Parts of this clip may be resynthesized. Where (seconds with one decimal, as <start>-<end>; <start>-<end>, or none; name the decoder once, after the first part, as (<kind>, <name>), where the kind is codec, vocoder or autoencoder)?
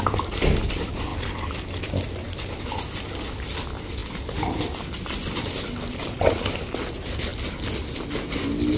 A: none